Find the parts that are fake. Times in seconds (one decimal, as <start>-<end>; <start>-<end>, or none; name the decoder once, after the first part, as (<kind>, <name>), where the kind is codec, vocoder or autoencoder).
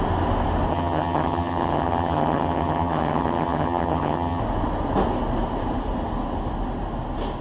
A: 0.7-4.4 (vocoder, HiFi-GAN)